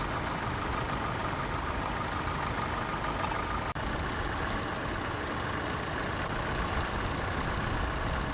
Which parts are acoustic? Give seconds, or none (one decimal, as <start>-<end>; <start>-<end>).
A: 0.0-1.2; 1.9-8.3

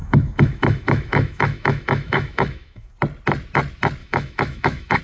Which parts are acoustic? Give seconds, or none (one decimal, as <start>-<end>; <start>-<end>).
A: 2.9-4.0

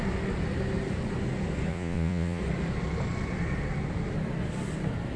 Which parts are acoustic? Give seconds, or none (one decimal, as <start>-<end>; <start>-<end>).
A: 0.0-1.7; 2.4-5.2

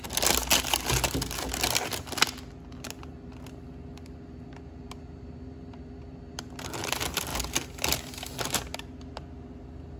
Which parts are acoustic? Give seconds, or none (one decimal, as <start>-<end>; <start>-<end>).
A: 0.0-10.0

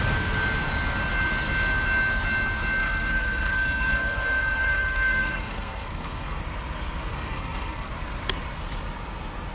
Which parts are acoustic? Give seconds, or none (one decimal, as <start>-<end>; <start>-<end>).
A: 0.0-2.8; 6.4-7.1; 7.9-9.5

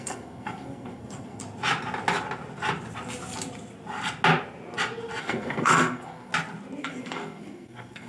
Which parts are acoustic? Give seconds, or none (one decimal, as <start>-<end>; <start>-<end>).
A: 1.4-5.2; 6.3-6.8